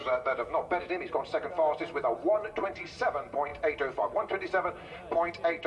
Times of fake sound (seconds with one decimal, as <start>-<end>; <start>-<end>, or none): 0.0-1.0